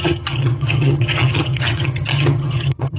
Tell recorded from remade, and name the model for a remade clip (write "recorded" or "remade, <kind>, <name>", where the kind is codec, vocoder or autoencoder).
remade, vocoder, HiFi-GAN